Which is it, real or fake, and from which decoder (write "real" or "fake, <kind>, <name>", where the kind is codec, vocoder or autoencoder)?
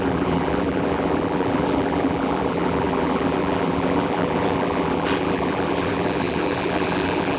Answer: fake, vocoder, BigVGAN v2